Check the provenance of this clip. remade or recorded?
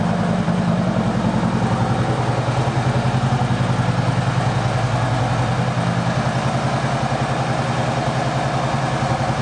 recorded